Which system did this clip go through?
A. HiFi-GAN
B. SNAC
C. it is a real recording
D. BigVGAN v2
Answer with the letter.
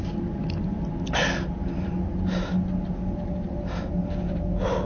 C